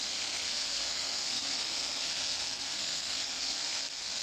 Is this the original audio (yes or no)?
no